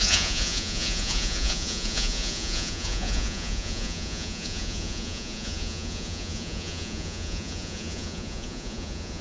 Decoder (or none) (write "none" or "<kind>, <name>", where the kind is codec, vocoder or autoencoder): vocoder, Vocos